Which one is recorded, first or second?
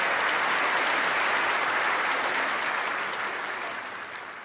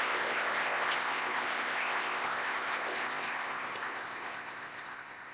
first